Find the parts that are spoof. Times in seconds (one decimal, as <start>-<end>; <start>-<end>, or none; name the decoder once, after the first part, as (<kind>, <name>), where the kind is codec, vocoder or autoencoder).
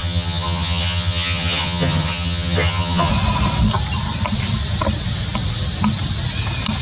0.0-3.1 (vocoder, HiFi-GAN)